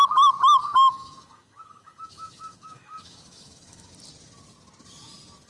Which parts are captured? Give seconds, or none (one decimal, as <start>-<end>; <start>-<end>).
0.0-0.6; 3.9-5.5